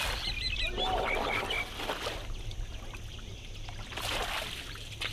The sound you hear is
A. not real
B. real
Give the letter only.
B